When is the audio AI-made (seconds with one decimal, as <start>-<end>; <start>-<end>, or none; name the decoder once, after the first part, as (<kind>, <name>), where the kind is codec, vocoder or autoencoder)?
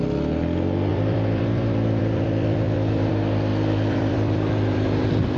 0.9-3.1 (vocoder, BigVGAN v2); 3.5-5.4